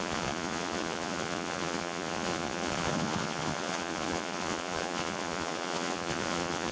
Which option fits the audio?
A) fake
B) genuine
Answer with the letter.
A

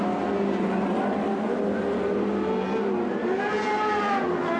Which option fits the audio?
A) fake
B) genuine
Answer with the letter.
B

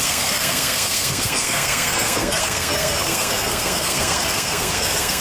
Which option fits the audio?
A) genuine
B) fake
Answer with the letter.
B